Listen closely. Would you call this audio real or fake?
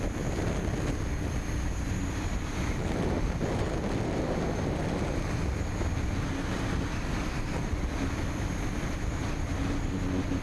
real